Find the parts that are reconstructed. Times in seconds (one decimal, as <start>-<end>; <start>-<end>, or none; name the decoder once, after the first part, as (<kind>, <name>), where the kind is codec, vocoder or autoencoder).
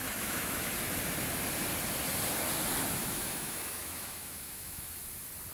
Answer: 0.0-0.7 (autoencoder, DAC-VAE); 3.0-5.0